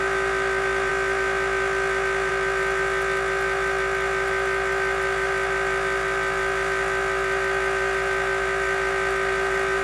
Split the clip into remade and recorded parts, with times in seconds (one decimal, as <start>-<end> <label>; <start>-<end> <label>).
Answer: 0.0-9.8 recorded